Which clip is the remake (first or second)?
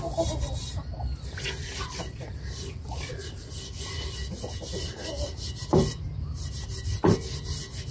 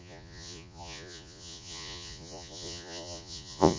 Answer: second